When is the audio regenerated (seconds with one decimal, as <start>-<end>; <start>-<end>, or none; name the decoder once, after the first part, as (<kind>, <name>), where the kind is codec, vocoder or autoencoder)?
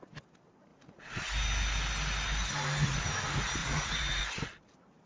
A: 0.7-1.3 (vocoder, Vocos); 3.6-4.2